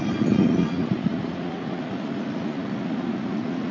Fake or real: fake